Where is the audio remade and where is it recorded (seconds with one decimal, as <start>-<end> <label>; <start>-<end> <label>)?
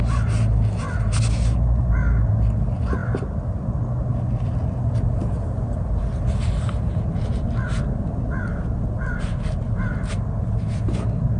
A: 0.0-11.4 recorded